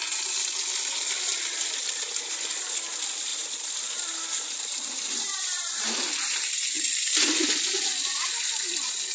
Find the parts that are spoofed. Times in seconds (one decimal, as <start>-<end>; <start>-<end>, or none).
3.3-6.6